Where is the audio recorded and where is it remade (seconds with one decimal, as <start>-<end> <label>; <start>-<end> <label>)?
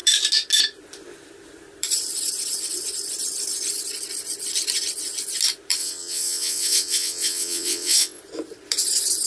0.0-5.8 recorded; 5.8-8.2 remade; 8.2-9.3 recorded